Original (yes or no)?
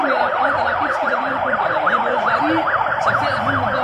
yes